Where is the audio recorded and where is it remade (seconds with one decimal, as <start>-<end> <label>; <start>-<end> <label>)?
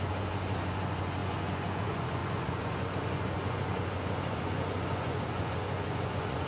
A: 0.0-6.5 remade